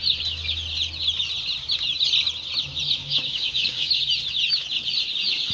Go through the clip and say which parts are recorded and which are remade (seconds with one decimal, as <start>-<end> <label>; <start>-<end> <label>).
0.0-3.0 recorded; 3.0-4.0 remade; 4.0-5.5 recorded

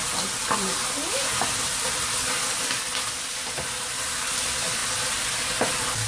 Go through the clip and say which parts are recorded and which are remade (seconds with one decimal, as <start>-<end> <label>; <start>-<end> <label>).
0.0-6.1 recorded